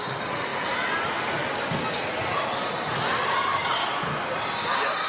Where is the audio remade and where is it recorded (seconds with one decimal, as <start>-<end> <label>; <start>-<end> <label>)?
0.0-5.1 recorded